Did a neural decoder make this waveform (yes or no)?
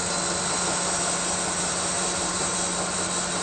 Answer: no